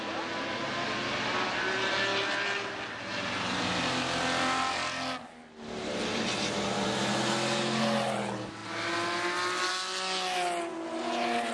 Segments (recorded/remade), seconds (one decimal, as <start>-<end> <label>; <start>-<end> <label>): 0.0-11.5 recorded